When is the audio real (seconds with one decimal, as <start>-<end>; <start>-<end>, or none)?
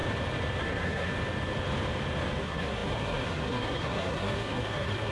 0.0-0.6; 1.1-2.4